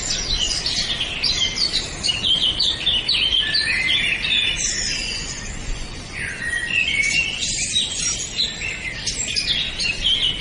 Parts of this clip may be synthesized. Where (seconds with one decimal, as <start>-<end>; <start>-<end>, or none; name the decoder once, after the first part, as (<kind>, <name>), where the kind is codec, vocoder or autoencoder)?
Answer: 5.0-8.0 (vocoder, Vocos)